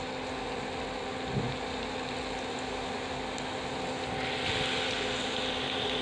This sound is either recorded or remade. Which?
recorded